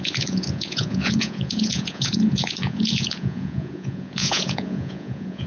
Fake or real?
fake